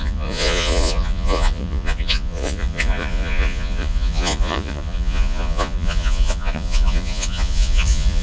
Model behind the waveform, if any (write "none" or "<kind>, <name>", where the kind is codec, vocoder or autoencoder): vocoder, Vocos